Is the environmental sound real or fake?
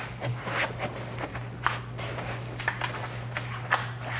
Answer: real